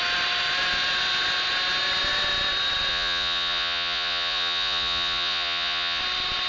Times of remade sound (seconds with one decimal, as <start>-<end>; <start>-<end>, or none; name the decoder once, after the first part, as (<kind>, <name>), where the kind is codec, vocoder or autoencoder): 2.9-6.0 (vocoder, Vocos)